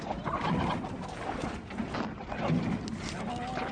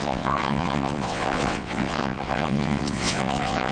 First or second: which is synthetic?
second